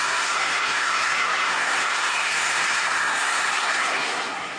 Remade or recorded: remade